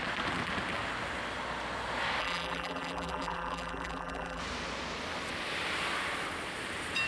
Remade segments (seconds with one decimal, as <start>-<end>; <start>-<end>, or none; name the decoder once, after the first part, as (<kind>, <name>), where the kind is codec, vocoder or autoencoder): 2.2-4.4 (vocoder, BigVGAN v2)